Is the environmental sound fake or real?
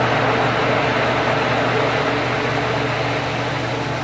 real